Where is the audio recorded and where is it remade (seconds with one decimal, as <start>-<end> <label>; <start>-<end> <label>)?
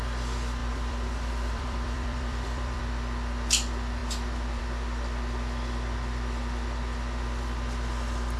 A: 0.0-0.6 recorded; 0.6-2.8 remade; 2.8-8.4 recorded